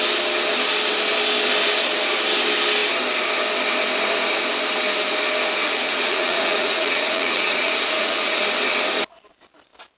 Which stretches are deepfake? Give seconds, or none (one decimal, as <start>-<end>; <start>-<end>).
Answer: 5.6-8.4